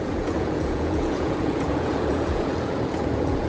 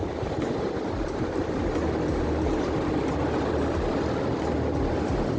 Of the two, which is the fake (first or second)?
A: first